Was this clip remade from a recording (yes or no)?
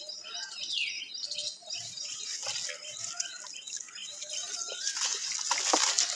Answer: no